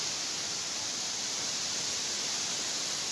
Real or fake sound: real